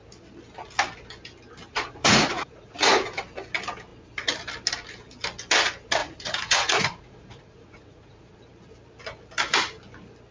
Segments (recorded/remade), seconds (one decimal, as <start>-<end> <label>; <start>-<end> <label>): 0.0-1.7 recorded; 1.7-3.2 remade; 3.2-6.0 recorded; 6.0-8.4 remade; 8.4-10.3 recorded